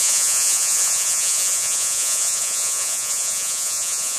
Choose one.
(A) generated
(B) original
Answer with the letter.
A